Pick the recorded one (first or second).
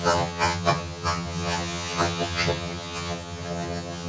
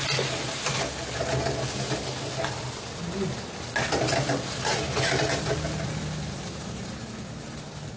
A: second